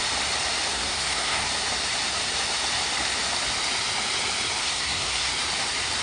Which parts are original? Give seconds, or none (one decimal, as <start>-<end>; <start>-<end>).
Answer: 0.0-0.7; 1.5-4.6; 5.3-6.0